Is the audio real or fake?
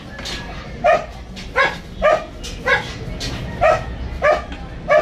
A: real